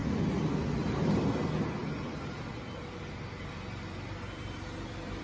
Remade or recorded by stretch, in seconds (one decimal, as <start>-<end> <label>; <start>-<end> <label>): 0.0-5.2 recorded